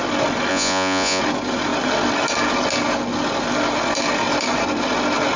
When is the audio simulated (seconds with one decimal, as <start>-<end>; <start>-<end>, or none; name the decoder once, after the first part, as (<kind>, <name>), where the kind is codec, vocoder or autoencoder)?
0.5-1.2 (vocoder, Vocos)